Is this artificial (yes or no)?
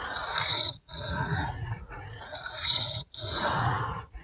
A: yes